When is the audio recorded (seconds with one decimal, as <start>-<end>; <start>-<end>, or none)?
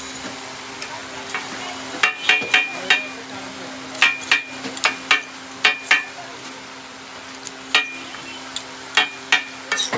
0.0-10.0